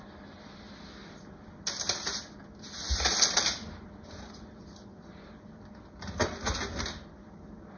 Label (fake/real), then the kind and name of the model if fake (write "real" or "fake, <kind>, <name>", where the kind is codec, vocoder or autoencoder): real